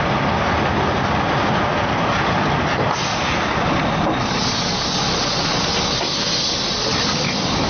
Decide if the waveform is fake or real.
real